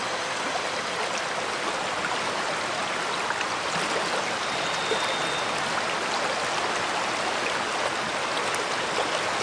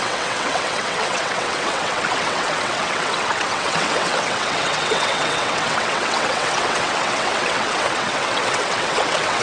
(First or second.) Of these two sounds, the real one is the first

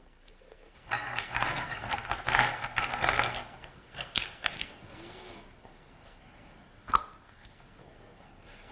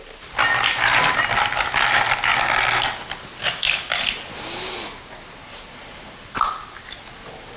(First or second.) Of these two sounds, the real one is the second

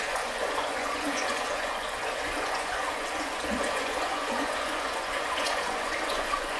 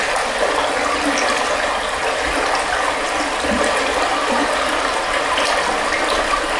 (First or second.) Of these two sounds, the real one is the second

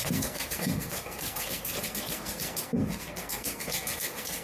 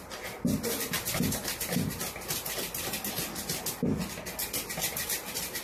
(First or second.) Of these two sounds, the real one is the second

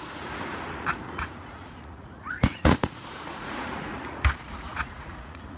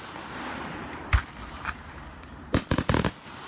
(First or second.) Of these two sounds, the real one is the second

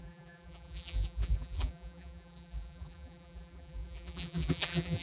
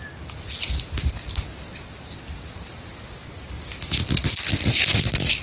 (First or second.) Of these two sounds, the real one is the second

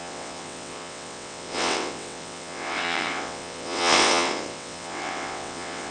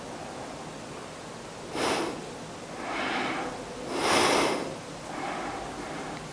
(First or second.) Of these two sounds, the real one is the second